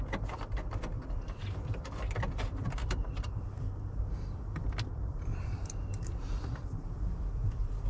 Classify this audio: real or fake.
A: fake